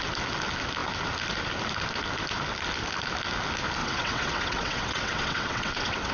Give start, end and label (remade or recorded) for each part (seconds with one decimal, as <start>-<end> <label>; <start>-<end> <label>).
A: 0.0-3.8 recorded; 3.8-6.1 remade